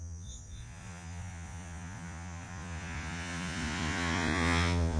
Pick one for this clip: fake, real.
fake